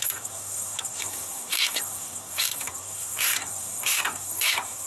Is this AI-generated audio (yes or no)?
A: yes